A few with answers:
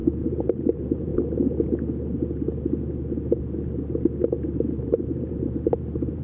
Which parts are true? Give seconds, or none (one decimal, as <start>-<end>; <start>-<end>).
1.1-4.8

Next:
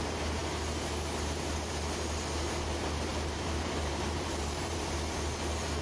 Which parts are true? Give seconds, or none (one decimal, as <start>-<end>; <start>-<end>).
0.0-3.1; 4.8-5.8

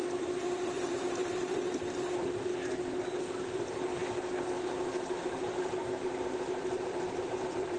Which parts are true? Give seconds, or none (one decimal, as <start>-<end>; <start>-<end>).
2.5-3.0; 4.0-6.3

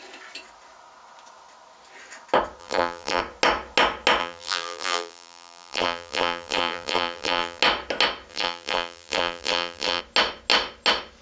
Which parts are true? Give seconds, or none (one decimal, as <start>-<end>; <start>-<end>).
0.0-2.6; 3.2-4.2; 7.6-8.3; 10.0-11.2

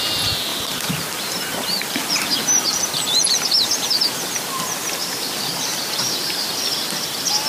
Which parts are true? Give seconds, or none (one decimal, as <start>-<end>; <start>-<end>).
0.0-0.5; 4.6-5.0; 6.5-7.5